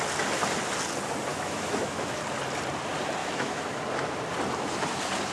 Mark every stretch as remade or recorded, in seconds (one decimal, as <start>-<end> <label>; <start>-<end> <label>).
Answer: 0.0-1.3 recorded; 1.3-2.2 remade; 2.2-3.2 recorded; 3.2-3.8 remade; 3.8-5.3 recorded